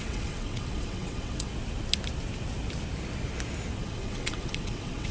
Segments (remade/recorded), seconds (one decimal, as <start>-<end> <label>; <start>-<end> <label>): 0.0-1.5 remade; 1.5-3.8 recorded; 3.8-5.1 remade